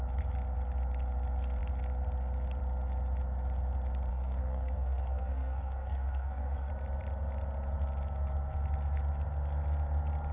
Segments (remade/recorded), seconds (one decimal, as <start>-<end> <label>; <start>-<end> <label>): 0.0-4.1 recorded; 4.1-6.7 remade; 6.7-10.3 recorded